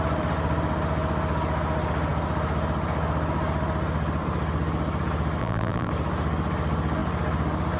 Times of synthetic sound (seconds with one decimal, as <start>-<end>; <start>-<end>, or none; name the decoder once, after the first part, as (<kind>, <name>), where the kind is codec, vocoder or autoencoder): 5.4-5.9 (vocoder, BigVGAN v2)